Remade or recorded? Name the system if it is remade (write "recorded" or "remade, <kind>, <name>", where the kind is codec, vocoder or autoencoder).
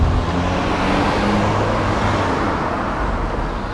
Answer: recorded